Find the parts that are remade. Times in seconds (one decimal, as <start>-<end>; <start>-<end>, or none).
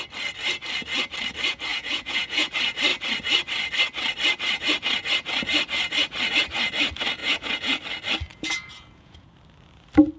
1.7-2.5; 7.2-7.8; 8.3-9.3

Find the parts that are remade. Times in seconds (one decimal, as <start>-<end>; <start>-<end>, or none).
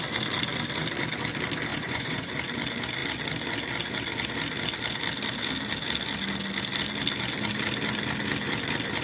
1.7-2.3